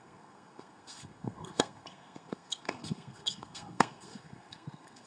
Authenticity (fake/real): fake